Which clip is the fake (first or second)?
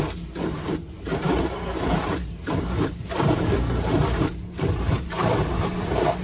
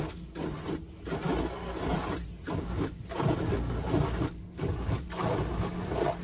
first